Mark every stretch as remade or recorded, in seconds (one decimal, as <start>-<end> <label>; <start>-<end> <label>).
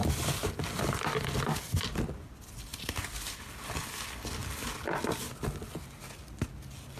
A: 0.0-7.0 recorded